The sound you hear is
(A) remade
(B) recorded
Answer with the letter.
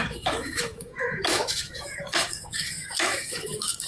A